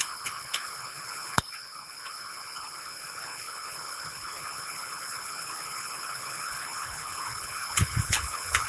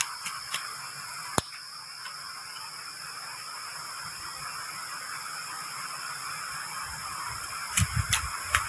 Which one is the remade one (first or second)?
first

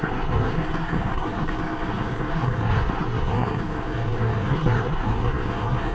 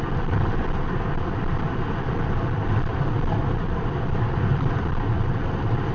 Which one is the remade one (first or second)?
first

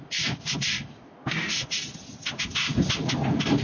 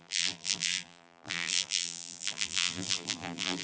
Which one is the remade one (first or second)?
second